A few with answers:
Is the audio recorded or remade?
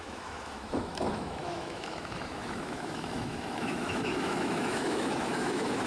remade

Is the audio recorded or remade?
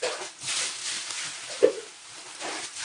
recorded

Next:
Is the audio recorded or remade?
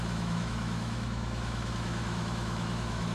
remade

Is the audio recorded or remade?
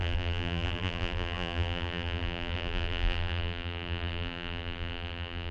remade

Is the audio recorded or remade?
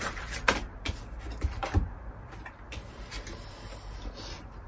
remade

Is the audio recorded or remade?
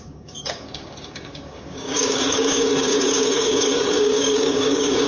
remade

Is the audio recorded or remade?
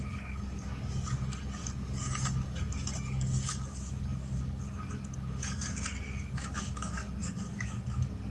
remade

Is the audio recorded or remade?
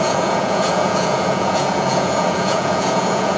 remade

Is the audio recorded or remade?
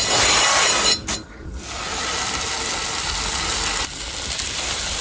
recorded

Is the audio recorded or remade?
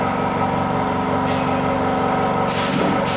recorded